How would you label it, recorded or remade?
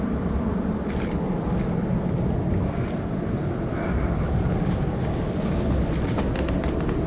recorded